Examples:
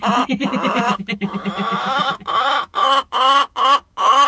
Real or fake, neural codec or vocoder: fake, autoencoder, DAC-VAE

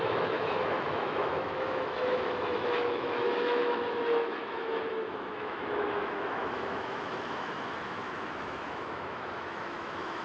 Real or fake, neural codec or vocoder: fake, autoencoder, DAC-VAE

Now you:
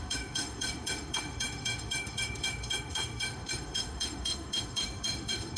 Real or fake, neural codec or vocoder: fake, autoencoder, DAC-VAE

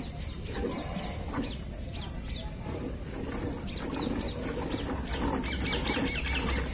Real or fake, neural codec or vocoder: real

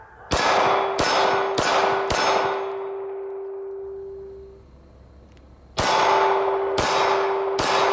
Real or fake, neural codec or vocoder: real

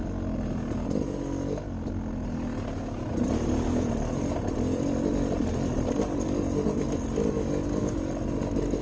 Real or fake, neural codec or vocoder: real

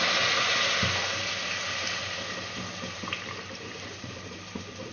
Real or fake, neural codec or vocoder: real